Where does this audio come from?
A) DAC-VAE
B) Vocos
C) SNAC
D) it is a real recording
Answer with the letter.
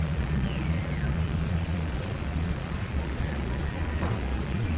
B